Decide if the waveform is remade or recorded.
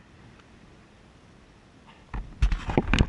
recorded